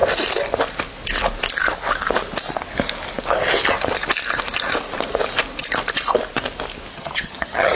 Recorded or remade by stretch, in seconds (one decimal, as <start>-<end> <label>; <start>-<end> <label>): 0.0-6.9 recorded; 6.9-7.8 remade